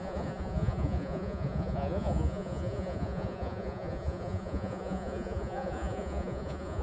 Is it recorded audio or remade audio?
remade